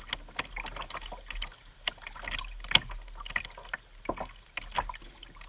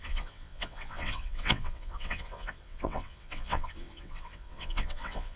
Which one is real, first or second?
first